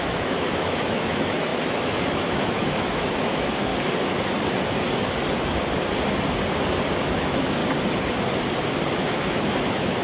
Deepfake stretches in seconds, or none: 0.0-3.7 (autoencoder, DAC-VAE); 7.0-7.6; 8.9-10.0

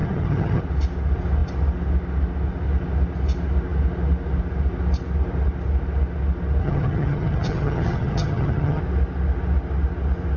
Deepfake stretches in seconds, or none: 0.0-0.6 (vocoder, HiFi-GAN); 6.6-8.8

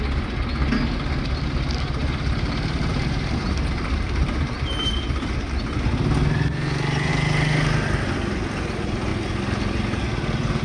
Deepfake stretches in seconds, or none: 2.0-4.9 (vocoder, BigVGAN v2)

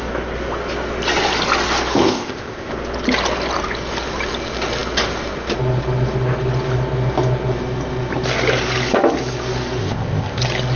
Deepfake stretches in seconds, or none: 2.0-2.7 (codec, ZipCodec); 9.8-10.4

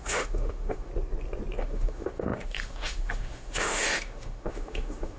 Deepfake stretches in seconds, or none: 0.0-0.9 (autoencoder, DAC-VAE); 1.6-5.2

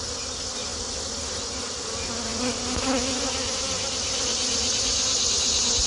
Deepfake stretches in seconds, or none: none